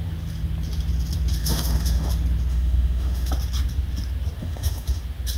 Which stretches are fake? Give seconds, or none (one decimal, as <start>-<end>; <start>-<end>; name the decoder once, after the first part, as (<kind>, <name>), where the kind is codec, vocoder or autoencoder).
1.4-2.1 (autoencoder, DAC-VAE); 2.5-3.3; 4.4-5.0